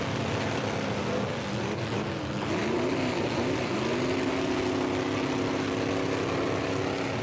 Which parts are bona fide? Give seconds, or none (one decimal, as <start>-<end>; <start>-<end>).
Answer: 0.0-7.2